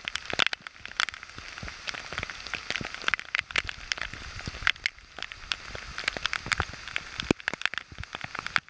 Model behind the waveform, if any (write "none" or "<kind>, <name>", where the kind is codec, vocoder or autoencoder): none